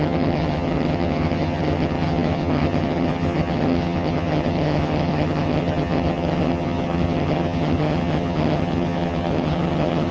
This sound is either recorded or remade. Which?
remade